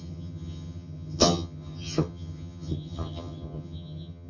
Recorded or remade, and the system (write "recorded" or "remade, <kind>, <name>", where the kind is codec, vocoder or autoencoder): remade, vocoder, HiFi-GAN